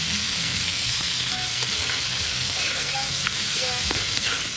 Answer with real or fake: fake